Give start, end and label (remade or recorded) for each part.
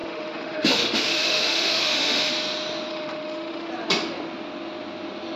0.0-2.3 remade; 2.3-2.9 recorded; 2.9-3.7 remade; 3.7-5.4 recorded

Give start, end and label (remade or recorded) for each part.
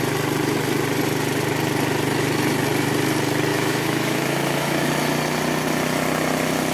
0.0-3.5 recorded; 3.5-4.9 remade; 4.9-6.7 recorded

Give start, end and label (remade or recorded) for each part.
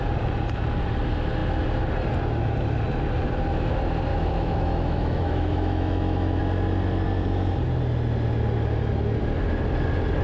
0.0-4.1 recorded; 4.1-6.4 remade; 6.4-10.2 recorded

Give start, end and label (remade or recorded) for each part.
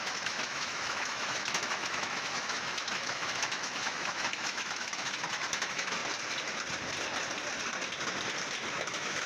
0.0-6.0 remade; 6.0-8.7 recorded; 8.7-9.3 remade